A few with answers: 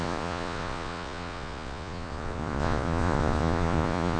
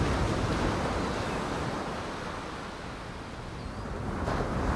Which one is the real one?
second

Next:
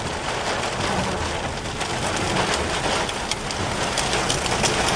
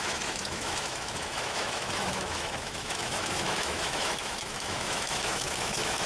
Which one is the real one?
first